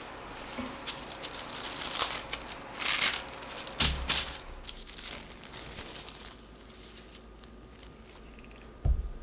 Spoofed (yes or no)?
no